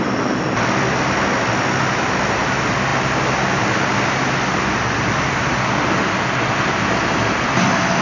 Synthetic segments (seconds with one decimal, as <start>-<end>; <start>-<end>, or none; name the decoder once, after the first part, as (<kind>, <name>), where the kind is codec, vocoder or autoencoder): none